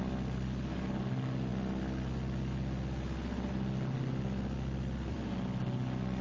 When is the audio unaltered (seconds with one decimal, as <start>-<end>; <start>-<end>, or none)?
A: 0.0-6.2